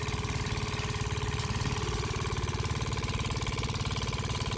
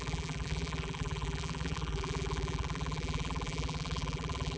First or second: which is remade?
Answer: second